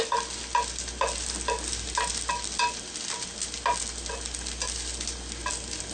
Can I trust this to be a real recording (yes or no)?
yes